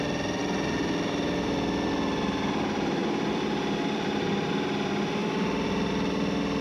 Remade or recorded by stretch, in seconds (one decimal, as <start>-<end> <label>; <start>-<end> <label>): 0.0-3.0 recorded; 3.0-4.5 remade; 4.5-5.2 recorded; 5.2-5.9 remade; 5.9-6.6 recorded